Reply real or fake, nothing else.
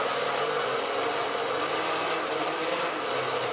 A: real